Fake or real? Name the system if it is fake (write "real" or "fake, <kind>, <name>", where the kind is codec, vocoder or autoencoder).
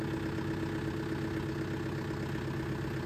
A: real